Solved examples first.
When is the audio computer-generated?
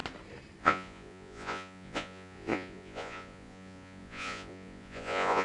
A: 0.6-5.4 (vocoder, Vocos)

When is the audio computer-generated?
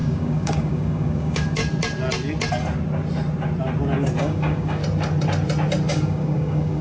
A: 0.0-1.6 (codec, DAC); 4.2-4.8; 5.9-6.8